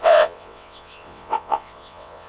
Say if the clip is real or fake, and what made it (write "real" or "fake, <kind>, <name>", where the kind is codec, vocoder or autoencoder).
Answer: fake, vocoder, WaveNeXt